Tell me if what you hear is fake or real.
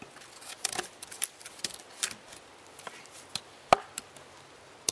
real